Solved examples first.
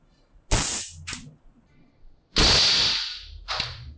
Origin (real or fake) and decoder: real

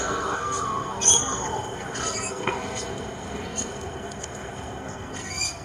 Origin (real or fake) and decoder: fake, codec, SNAC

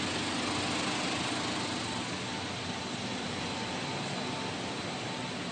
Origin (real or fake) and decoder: real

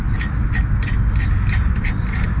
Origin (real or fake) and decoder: real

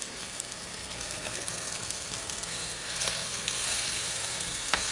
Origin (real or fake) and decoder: fake, codec, SNAC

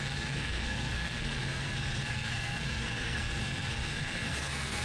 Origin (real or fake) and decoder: fake, codec, SNAC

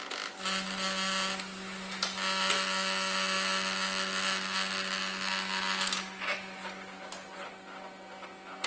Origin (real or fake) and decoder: real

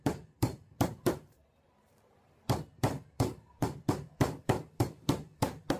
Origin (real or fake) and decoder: fake, vocoder, BigVGAN v2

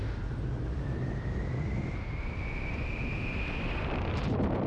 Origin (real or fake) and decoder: fake, vocoder, BigVGAN v2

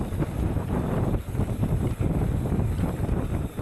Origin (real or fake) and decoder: real